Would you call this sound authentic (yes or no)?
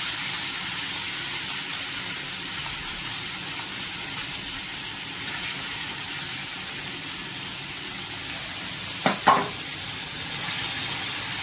no